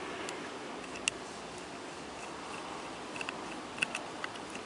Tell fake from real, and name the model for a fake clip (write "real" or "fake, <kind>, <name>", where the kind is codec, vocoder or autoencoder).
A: real